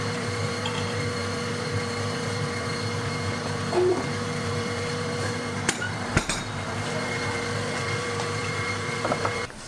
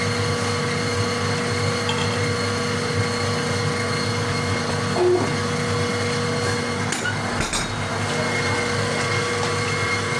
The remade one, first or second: first